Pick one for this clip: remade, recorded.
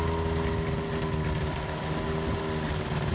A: recorded